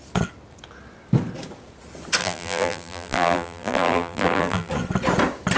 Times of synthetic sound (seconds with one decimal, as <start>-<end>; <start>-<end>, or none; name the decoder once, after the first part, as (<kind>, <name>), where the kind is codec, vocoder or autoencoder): 2.2-4.7 (vocoder, BigVGAN v2)